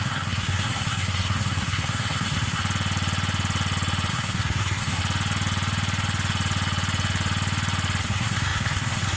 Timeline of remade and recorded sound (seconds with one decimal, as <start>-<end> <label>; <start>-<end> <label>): 0.0-2.6 remade; 2.6-4.1 recorded; 4.1-5.0 remade; 5.0-8.0 recorded; 8.0-9.2 remade